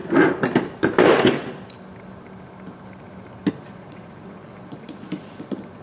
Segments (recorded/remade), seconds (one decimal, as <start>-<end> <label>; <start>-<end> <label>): 0.0-3.5 recorded; 3.5-5.8 remade